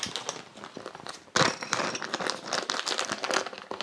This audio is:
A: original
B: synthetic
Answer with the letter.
A